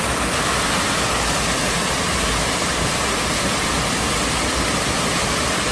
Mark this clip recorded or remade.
recorded